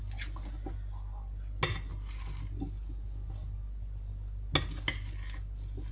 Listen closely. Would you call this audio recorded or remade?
recorded